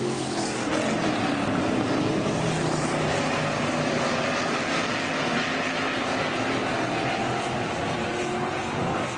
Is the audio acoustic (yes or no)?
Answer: yes